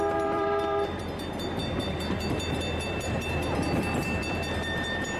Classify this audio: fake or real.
fake